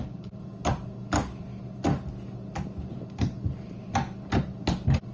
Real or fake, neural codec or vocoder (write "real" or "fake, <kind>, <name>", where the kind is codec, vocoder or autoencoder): real